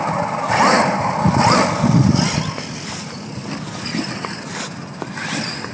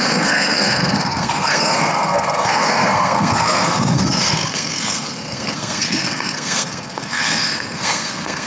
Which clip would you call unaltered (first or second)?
first